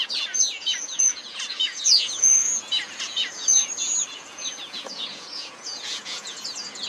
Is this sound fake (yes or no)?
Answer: yes